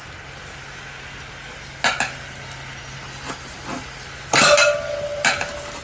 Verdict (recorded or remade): recorded